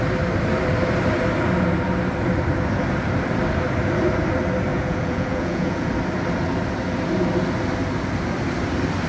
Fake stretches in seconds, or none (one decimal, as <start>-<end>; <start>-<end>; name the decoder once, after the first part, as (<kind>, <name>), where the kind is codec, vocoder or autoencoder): 4.7-5.9 (vocoder, Vocos)